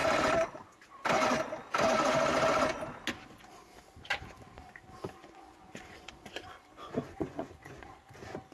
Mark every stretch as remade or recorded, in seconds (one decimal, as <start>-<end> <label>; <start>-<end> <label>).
0.0-5.2 recorded; 5.2-8.0 remade; 8.0-8.5 recorded